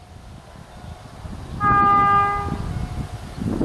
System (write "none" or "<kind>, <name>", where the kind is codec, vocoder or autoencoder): none